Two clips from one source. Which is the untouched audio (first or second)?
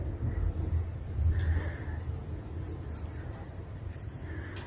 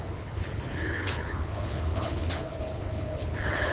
first